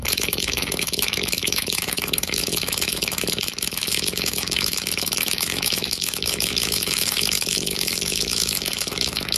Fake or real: fake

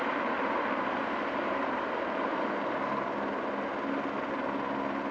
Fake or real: real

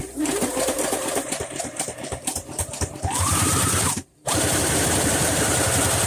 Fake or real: fake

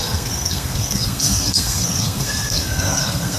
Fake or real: fake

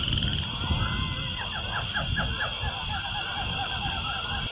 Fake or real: real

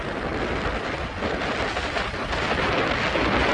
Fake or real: real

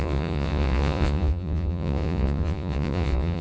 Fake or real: fake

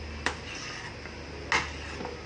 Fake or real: real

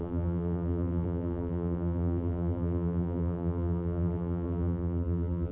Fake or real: fake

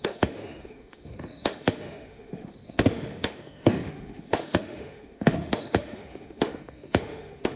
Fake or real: fake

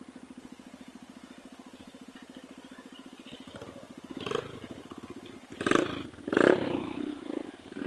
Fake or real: real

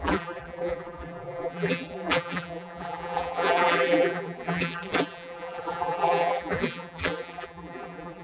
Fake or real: fake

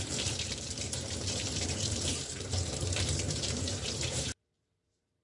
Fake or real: fake